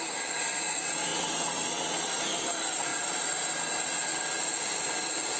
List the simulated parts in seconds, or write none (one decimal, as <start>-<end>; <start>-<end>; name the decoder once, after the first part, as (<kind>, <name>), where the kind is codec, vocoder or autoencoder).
none